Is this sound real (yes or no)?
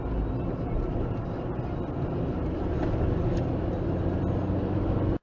yes